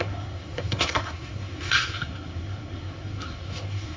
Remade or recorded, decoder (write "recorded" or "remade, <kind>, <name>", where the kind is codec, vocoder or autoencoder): remade, codec, SNAC